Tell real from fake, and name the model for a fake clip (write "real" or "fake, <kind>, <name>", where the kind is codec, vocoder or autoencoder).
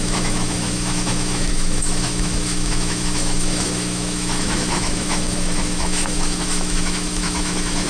fake, autoencoder, DAC-VAE